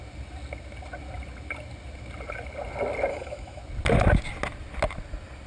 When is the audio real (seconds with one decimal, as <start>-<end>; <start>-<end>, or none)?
0.0-3.1; 3.6-5.5